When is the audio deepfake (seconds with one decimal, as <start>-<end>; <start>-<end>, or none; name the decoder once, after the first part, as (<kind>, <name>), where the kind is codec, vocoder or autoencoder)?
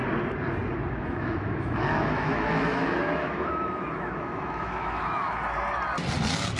1.0-5.4 (autoencoder, DAC-VAE)